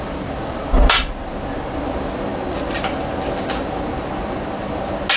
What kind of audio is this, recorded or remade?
recorded